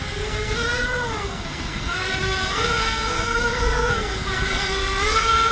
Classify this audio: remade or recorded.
remade